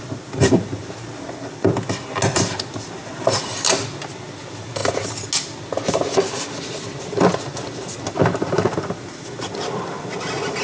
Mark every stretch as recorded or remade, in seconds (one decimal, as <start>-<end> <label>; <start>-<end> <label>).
0.0-10.6 recorded